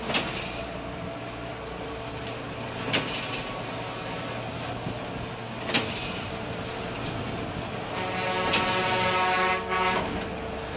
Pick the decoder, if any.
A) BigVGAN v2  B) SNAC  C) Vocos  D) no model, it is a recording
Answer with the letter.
D